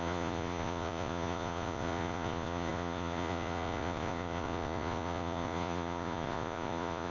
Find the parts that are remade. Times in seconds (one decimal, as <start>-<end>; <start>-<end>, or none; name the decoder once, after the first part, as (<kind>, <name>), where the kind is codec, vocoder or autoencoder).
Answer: 0.0-7.1 (vocoder, Vocos)